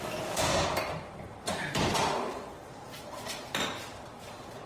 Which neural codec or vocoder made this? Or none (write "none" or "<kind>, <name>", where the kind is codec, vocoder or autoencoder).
vocoder, BigVGAN v2